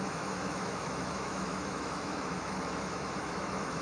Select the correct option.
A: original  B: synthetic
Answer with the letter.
B